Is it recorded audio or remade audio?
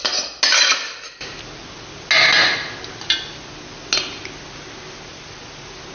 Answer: recorded